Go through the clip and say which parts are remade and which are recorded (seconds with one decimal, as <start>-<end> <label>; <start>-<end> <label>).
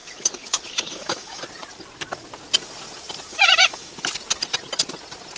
0.0-1.4 remade; 1.4-3.3 recorded; 3.3-3.9 remade; 3.9-5.4 recorded